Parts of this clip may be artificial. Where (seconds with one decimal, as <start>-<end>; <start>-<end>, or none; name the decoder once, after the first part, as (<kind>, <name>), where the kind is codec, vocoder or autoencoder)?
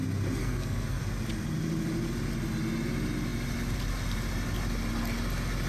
0.4-1.0 (codec, SNAC)